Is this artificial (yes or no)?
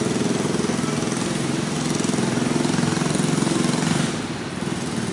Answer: no